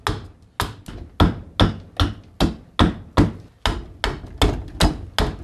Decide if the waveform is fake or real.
real